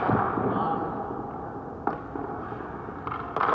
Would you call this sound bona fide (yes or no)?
yes